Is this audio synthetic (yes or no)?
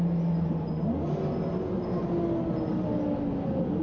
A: no